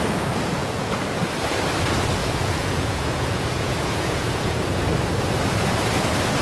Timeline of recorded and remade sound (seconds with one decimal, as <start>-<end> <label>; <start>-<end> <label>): 0.0-0.6 recorded; 0.6-1.2 remade; 1.2-2.2 recorded; 2.2-4.8 remade; 4.8-6.4 recorded